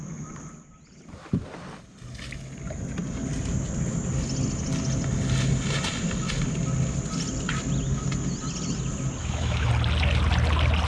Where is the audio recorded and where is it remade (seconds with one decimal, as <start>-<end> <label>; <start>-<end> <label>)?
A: 0.0-9.2 recorded; 9.2-9.7 remade; 9.7-10.9 recorded